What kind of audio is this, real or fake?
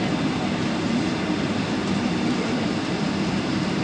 real